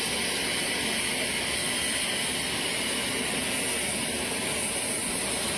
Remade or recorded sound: recorded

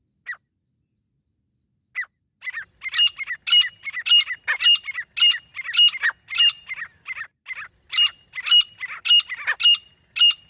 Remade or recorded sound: recorded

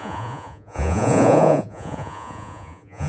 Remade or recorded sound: remade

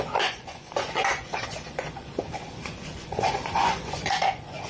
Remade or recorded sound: remade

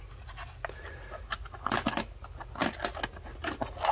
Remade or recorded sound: recorded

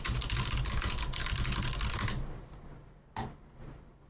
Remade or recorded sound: recorded